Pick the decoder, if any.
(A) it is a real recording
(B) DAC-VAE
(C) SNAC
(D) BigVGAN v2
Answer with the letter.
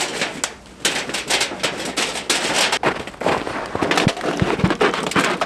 A